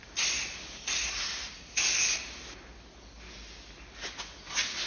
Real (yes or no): yes